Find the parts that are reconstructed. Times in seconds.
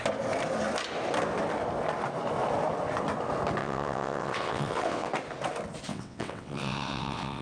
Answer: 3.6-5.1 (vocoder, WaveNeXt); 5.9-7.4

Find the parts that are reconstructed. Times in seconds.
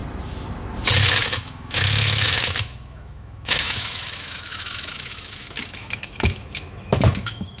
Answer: 1.1-7.6 (autoencoder, DAC-VAE)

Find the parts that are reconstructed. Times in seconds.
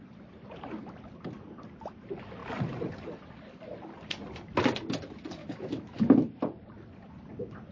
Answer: 5.4-6.4 (autoencoder, DAC-VAE)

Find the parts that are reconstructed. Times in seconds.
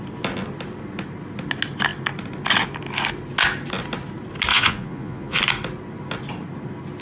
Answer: 4.5-5.4 (vocoder, Vocos)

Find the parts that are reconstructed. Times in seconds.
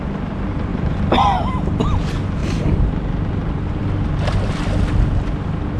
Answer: 0.7-1.5 (vocoder, BigVGAN v2); 2.4-3.8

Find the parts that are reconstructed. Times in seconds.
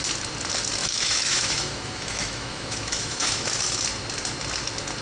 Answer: 0.8-3.8 (autoencoder, DAC-VAE)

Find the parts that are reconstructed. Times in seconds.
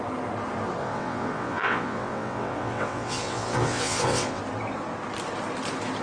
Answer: 0.8-4.4 (vocoder, WaveNeXt)